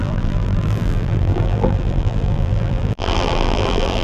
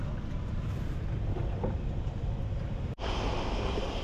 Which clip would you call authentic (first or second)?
second